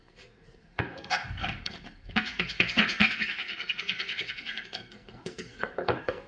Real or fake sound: fake